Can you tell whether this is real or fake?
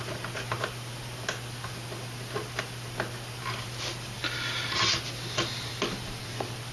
real